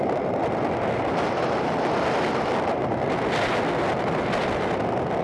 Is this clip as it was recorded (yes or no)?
yes